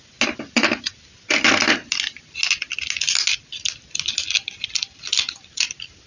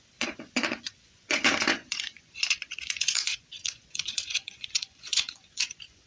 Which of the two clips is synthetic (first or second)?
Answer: second